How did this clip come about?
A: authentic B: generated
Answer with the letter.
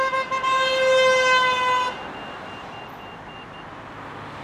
A